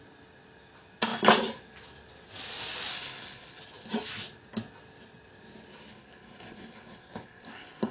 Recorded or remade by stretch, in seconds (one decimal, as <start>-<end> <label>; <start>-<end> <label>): 0.0-2.9 recorded; 2.9-3.6 remade; 3.6-5.9 recorded; 5.9-7.9 remade